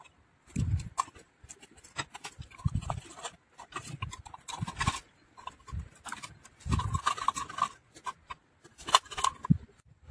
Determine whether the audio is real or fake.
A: real